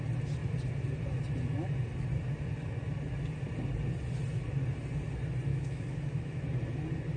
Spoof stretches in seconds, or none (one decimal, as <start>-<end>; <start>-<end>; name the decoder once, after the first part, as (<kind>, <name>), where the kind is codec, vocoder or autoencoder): 5.5-6.4 (autoencoder, DAC-VAE)